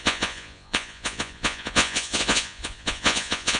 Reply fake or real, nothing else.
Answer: fake